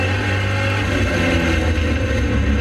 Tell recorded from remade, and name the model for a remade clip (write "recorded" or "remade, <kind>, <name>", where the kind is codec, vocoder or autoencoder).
recorded